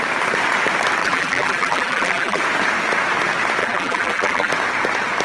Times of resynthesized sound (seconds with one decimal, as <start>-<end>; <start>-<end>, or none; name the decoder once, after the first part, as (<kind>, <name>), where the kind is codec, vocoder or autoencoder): 1.0-2.4 (vocoder, BigVGAN v2); 3.6-4.5